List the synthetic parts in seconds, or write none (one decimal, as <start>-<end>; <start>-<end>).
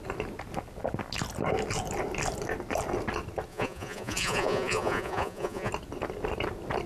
3.5-5.7